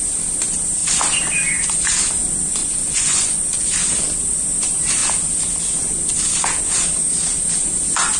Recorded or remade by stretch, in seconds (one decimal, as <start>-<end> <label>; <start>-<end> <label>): 0.0-2.6 recorded; 2.6-3.6 remade; 3.6-8.2 recorded